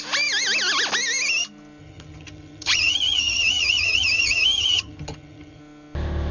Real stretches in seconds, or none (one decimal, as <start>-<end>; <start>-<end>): 0.0-1.8; 5.6-6.3

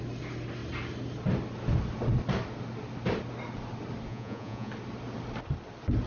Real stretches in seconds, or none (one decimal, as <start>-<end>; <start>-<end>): 0.0-4.1; 4.7-6.1

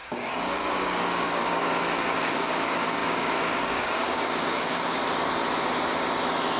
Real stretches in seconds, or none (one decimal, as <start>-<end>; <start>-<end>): 5.0-6.6

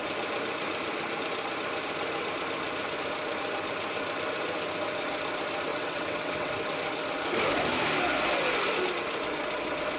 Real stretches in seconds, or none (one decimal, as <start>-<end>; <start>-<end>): 0.0-5.7; 6.5-10.0

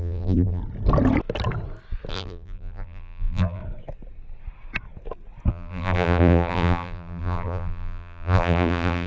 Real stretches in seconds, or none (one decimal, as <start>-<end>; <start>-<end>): 0.6-2.1; 3.6-5.5

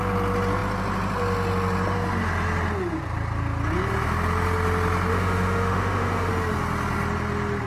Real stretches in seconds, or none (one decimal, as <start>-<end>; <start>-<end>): 0.0-5.1; 6.3-7.7

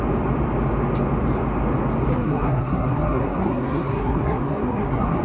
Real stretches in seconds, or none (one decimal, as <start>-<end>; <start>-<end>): 0.0-2.1

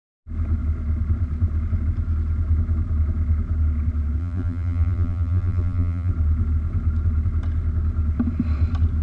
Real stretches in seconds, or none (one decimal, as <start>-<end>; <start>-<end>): 0.0-4.2; 6.1-9.0